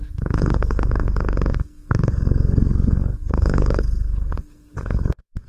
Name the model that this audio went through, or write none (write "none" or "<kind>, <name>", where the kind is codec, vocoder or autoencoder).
codec, SNAC